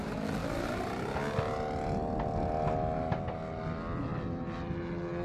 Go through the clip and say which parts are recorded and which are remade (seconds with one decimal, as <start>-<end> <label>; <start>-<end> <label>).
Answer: 0.0-5.2 recorded